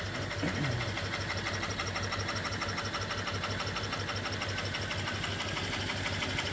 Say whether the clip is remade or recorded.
recorded